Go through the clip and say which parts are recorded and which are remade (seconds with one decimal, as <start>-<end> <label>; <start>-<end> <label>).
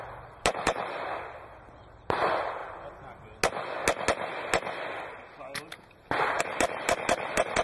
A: 0.0-2.6 remade; 2.6-6.4 recorded; 6.4-7.6 remade